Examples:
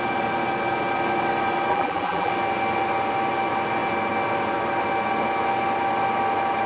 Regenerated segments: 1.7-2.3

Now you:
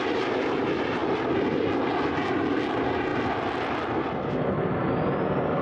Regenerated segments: none

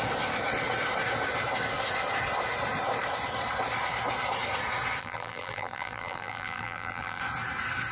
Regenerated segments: 5.0-7.2